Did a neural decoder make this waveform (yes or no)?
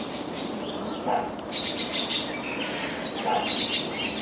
no